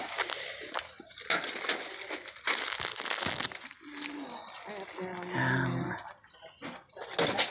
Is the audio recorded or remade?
recorded